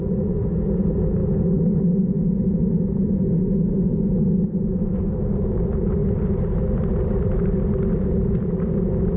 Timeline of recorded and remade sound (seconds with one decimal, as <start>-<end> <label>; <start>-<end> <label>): 0.0-9.2 recorded